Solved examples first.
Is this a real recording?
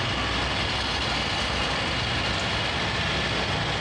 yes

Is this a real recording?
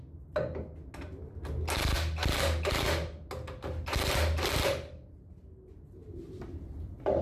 yes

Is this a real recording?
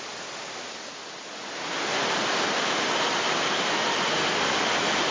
yes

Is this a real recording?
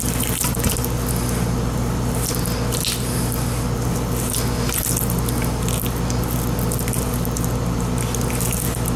yes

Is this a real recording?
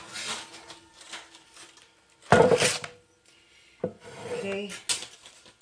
yes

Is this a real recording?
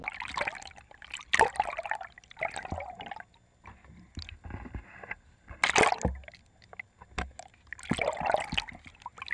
yes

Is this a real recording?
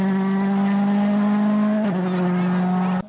yes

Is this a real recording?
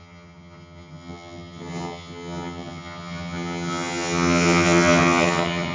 no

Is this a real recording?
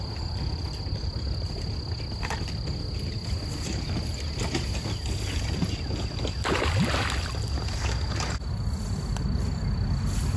yes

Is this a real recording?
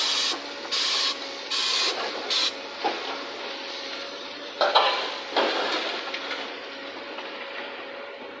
yes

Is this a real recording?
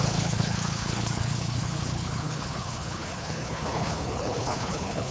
no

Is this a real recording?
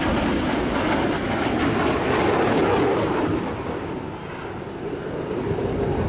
yes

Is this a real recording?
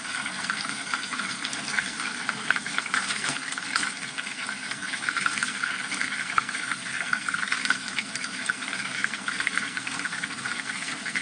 no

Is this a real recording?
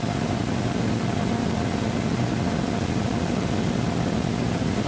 yes